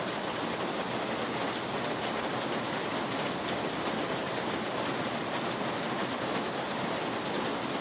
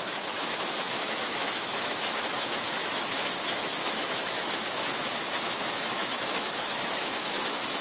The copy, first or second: second